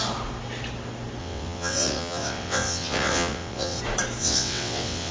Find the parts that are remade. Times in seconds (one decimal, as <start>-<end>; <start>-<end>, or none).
1.2-3.8; 4.2-5.1